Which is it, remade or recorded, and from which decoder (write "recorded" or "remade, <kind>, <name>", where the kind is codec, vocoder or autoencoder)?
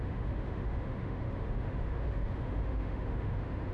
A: remade, autoencoder, DAC-VAE